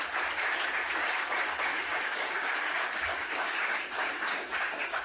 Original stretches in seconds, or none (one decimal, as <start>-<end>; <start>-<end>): 0.0-1.7